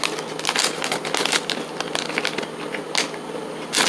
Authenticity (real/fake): real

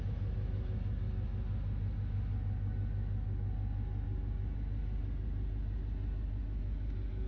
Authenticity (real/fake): real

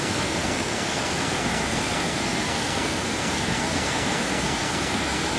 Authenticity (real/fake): fake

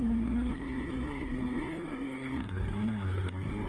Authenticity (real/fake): fake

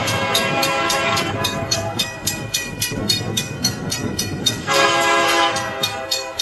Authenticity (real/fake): fake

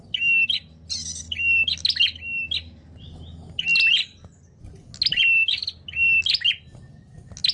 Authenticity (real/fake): real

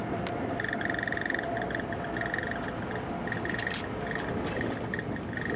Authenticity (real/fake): real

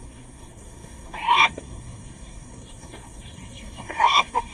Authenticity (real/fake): fake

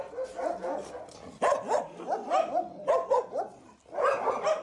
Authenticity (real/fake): real